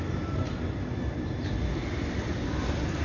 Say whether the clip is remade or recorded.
recorded